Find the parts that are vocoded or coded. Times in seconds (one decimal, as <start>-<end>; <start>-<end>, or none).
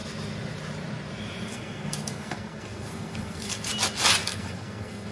1.5-3.7; 4.2-5.1